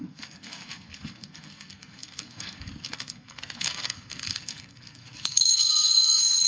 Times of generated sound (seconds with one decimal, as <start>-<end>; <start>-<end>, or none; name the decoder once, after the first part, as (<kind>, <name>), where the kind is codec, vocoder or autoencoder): 0.0-6.5 (codec, SNAC)